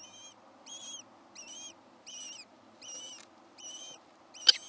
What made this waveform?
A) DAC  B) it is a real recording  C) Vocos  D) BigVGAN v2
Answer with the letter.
B